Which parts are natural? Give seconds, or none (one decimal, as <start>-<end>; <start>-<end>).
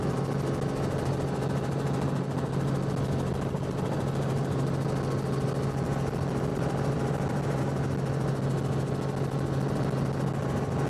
0.0-6.5; 7.6-10.9